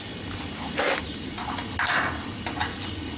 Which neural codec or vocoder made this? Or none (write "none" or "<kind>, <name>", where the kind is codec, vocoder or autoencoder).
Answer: none